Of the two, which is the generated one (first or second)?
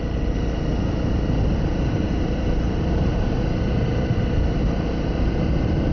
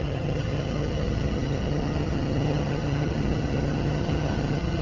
second